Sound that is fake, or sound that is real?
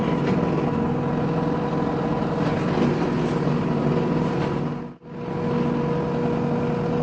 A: real